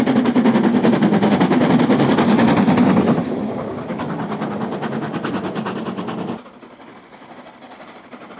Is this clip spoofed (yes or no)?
no